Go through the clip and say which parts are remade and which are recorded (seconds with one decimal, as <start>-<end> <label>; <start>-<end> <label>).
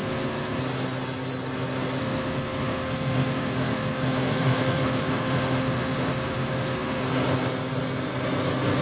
0.0-0.6 remade; 0.6-2.0 recorded; 2.0-7.0 remade; 7.0-8.8 recorded